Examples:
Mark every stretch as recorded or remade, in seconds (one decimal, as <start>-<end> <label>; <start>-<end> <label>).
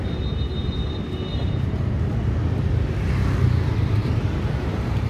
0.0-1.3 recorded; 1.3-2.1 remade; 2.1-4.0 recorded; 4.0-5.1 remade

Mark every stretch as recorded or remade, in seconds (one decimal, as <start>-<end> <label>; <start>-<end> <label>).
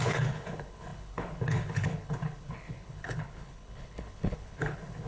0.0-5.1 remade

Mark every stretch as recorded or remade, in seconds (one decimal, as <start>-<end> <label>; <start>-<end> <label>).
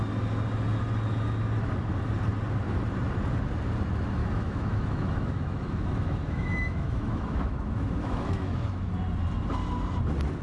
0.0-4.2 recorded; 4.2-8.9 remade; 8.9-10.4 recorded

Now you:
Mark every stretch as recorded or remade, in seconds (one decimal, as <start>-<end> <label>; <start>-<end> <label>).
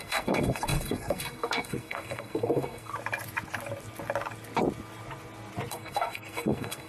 0.0-2.9 remade; 2.9-5.7 recorded; 5.7-6.9 remade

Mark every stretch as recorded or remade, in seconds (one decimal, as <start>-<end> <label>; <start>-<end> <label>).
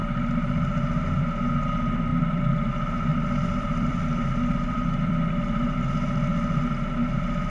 0.0-2.1 recorded; 2.1-2.7 remade; 2.7-3.1 recorded; 3.1-5.1 remade; 5.1-7.5 recorded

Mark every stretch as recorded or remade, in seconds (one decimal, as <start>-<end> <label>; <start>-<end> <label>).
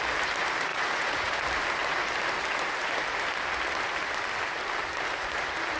0.0-0.7 recorded; 0.7-1.3 remade; 1.3-5.8 recorded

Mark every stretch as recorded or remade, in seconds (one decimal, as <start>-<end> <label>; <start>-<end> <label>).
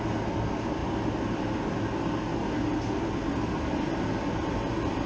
0.0-5.1 recorded